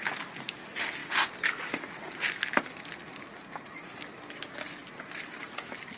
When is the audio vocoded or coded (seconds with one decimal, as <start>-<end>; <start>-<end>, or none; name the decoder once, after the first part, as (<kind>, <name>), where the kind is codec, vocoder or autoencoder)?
none